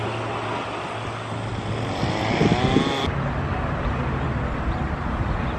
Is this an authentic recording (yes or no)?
yes